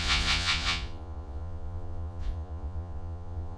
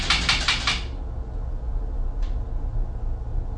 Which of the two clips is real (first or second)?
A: second